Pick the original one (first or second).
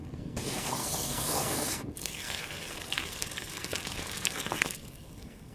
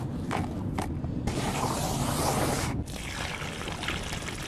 second